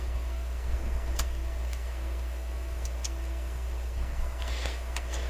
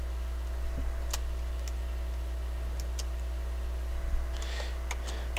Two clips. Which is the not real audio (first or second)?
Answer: first